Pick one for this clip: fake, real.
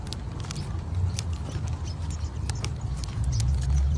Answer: real